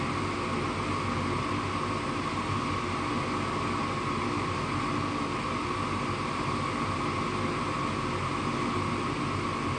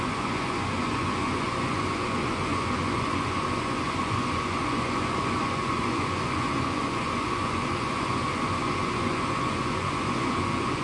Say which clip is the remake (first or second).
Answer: second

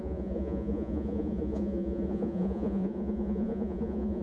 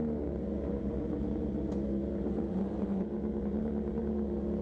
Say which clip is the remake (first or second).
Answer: first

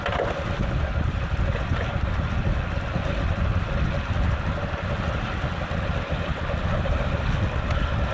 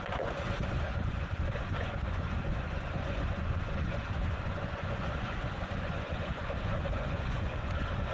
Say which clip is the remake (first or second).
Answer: second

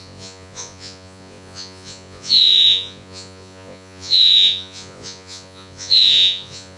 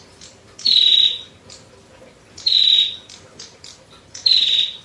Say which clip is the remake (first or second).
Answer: first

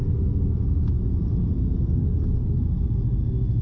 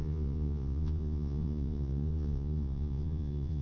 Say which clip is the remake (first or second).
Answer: second